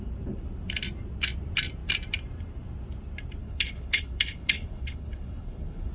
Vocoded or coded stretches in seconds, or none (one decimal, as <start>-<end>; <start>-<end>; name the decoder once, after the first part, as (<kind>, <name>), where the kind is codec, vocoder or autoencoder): 3.4-5.9 (codec, HILCodec)